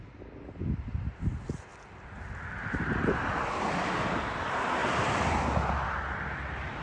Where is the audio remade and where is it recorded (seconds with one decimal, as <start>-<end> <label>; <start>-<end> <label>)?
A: 0.0-6.8 recorded